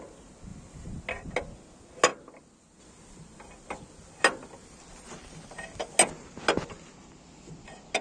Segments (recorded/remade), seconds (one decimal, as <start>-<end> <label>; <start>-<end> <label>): 0.0-8.0 recorded